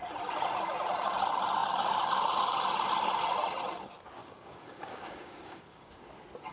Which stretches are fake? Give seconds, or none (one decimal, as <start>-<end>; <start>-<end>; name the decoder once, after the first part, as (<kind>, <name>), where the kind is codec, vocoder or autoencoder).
4.2-6.1 (codec, DAC)